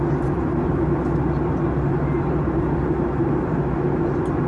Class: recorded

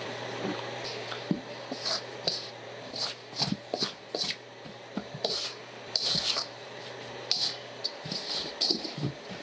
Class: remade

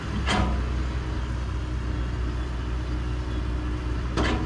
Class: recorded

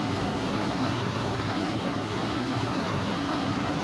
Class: remade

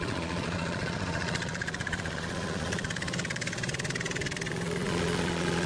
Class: remade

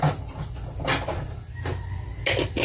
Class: recorded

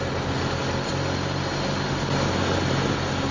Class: recorded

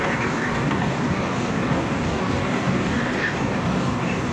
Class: remade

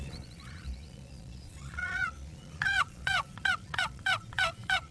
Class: remade